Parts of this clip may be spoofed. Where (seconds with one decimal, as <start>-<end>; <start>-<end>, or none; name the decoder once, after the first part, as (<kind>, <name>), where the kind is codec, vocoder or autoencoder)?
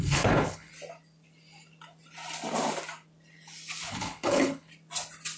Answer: 0.0-0.7 (codec, HILCodec); 3.9-4.7